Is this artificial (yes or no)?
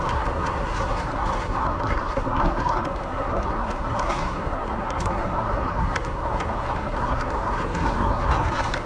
yes